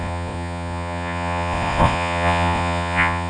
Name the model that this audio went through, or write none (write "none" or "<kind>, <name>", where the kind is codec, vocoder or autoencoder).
vocoder, Vocos